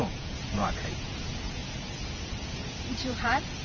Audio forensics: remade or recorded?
remade